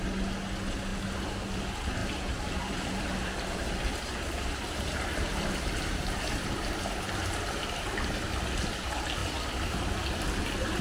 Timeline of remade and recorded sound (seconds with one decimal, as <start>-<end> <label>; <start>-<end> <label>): 0.0-2.0 recorded; 2.0-6.8 remade; 6.8-10.8 recorded